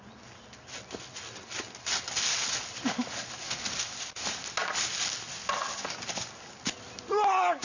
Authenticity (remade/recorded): recorded